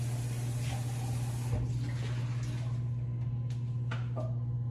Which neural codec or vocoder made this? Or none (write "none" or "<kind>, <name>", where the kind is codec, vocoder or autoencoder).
none